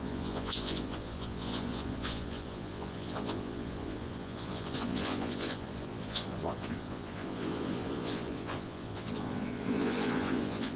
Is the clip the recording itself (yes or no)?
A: no